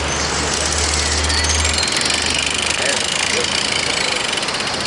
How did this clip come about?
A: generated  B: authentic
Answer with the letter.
B